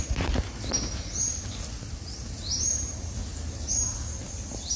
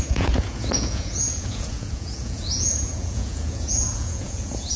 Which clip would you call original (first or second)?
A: first